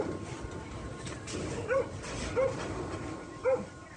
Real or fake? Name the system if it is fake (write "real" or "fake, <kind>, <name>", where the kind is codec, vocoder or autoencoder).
real